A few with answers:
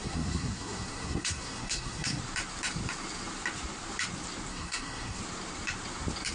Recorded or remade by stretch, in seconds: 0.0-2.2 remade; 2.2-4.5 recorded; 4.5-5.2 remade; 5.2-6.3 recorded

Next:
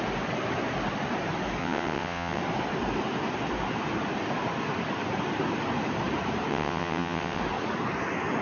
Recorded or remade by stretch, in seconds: 0.0-1.6 recorded; 1.6-2.4 remade; 2.4-6.5 recorded; 6.5-7.4 remade; 7.4-8.4 recorded

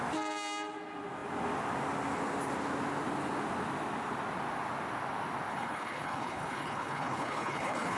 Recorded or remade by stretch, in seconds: 0.0-5.5 recorded; 5.5-8.0 remade

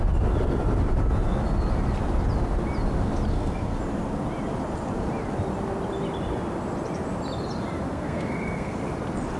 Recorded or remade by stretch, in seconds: 0.0-3.3 recorded; 3.3-3.8 remade; 3.8-7.9 recorded; 7.9-8.8 remade; 8.8-9.4 recorded

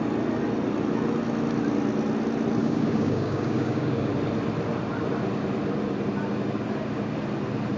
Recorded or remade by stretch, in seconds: 0.0-2.6 recorded; 2.6-4.1 remade; 4.1-7.8 recorded

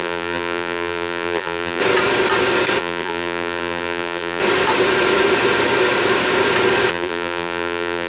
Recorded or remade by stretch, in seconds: 0.0-1.8 remade; 1.8-2.8 recorded; 2.8-4.4 remade; 4.4-6.9 recorded; 6.9-8.1 remade

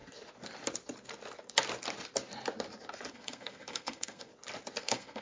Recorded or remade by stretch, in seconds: 0.0-3.1 recorded; 3.1-4.3 remade; 4.3-4.8 recorded; 4.8-5.2 remade

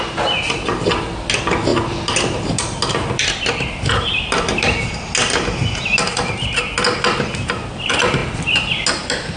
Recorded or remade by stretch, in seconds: 0.0-9.4 recorded